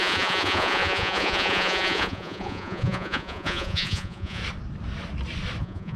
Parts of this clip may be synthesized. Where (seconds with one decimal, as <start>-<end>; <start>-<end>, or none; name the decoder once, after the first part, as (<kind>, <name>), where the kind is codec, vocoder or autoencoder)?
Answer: 0.0-4.4 (vocoder, Vocos); 5.6-6.0